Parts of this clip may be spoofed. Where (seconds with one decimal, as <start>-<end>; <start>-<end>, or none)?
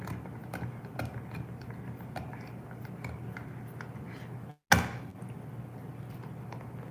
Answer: none